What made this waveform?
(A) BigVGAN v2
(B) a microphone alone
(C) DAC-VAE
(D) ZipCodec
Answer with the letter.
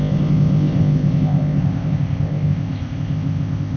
D